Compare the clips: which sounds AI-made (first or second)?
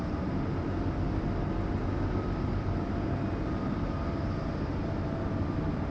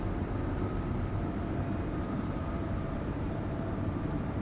second